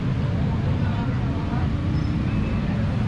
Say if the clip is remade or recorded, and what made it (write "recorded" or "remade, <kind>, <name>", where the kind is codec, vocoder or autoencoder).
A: recorded